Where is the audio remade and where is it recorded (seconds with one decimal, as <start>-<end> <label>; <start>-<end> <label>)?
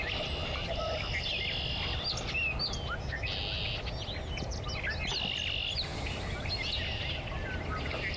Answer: 0.0-8.2 recorded